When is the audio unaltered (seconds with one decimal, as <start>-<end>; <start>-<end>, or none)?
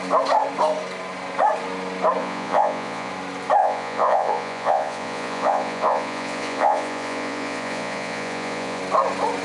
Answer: 0.0-2.2; 3.1-3.6; 8.8-9.4